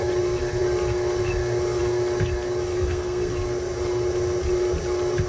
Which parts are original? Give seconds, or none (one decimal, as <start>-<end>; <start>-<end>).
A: 0.0-2.7; 3.3-5.3